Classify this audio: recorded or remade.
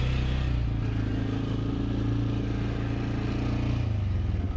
recorded